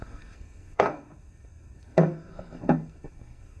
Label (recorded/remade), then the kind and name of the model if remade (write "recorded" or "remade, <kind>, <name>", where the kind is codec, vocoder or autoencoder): remade, codec, SNAC